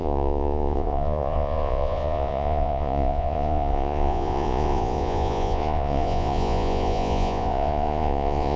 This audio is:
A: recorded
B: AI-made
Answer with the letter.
B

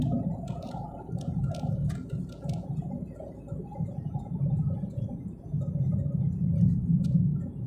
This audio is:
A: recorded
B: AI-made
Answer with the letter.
B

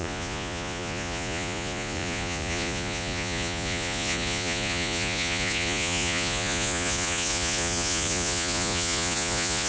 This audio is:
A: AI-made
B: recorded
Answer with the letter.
A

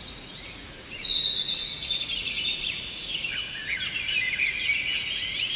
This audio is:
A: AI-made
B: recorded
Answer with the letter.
A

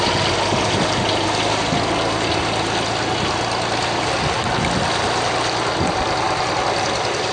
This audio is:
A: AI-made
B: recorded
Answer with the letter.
B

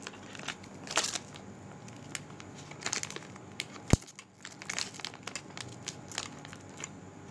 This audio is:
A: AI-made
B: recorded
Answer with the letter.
B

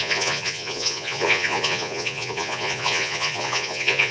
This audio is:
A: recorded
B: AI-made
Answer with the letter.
B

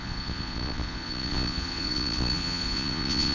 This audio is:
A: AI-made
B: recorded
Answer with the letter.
A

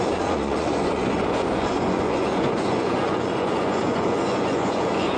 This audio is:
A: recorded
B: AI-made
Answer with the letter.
B